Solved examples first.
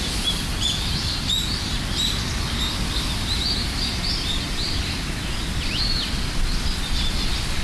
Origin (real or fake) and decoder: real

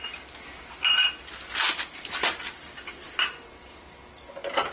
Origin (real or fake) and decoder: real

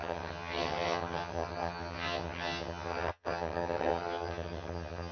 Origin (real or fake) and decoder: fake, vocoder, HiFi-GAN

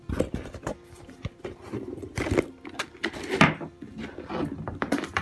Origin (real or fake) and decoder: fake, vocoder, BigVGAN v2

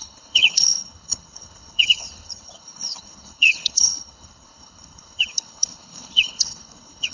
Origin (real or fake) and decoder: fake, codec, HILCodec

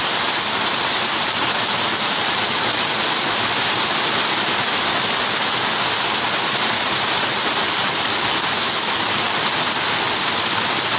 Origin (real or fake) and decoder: real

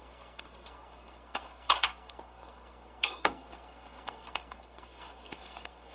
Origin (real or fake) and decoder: fake, codec, SNAC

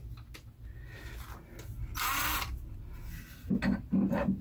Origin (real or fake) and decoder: real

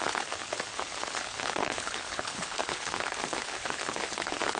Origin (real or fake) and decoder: fake, codec, HILCodec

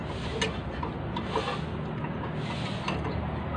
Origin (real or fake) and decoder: real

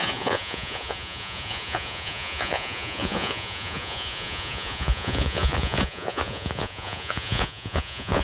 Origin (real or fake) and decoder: fake, vocoder, Vocos